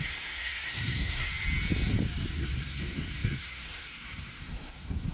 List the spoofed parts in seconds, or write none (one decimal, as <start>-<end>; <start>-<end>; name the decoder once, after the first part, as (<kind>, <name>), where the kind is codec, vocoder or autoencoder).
0.0-1.3 (codec, SNAC); 2.3-5.1